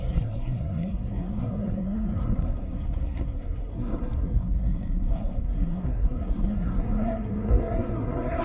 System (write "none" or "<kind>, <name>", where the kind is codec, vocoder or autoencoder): codec, SNAC